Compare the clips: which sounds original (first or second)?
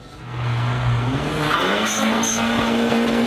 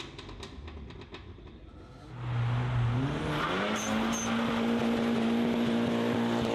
second